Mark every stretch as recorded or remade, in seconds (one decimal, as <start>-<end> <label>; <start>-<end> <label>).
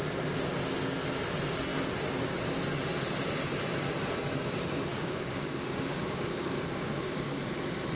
0.0-4.9 recorded; 4.9-7.4 remade; 7.4-8.0 recorded